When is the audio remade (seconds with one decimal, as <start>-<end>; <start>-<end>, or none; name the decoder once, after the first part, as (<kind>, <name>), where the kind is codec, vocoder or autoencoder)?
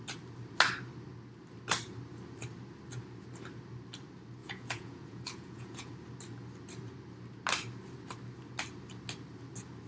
4.4-5.9 (vocoder, Vocos)